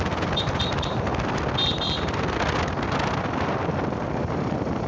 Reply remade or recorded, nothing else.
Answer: recorded